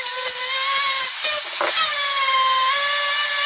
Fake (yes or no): no